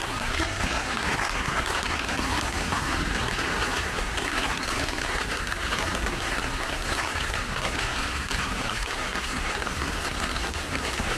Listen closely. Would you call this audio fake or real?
fake